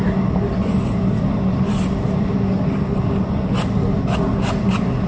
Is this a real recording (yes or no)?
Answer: yes